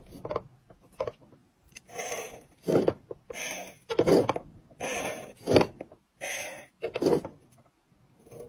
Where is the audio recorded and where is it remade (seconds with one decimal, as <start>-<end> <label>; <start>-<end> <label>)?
0.0-1.4 recorded; 1.4-2.3 remade; 2.3-8.5 recorded